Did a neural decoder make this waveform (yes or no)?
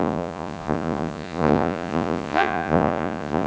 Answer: yes